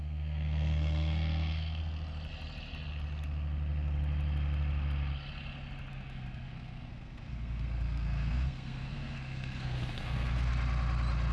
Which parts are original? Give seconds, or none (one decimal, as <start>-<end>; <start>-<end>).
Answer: 1.8-5.9; 10.5-11.3